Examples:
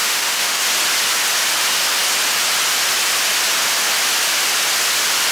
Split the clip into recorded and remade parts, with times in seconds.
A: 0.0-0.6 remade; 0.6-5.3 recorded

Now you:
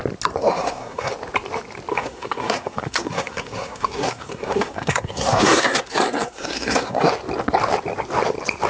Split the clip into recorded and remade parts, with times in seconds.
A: 0.0-0.4 recorded; 0.4-1.1 remade; 1.1-1.9 recorded; 1.9-7.1 remade; 7.1-8.7 recorded